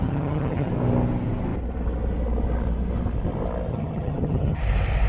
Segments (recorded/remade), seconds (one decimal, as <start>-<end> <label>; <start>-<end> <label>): 0.0-0.7 remade; 0.7-3.7 recorded; 3.7-4.6 remade; 4.6-5.1 recorded